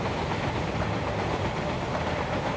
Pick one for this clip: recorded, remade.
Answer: recorded